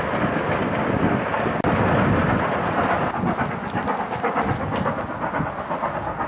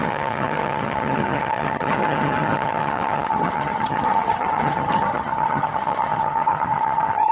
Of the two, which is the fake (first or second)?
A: second